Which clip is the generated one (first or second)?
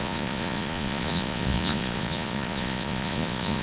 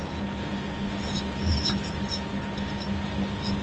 first